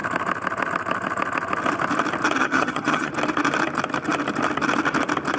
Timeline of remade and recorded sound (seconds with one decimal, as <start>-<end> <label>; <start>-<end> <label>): 0.0-2.4 recorded; 2.4-3.1 remade; 3.1-5.4 recorded